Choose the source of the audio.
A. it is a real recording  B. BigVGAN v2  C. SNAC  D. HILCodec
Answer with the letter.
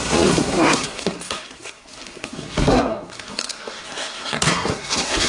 C